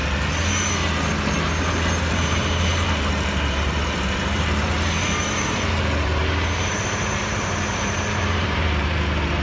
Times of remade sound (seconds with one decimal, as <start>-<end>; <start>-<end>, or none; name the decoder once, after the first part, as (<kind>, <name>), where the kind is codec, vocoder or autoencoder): 2.1-6.2 (vocoder, BigVGAN v2); 6.7-9.4